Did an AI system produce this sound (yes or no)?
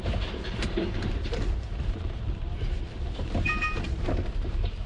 yes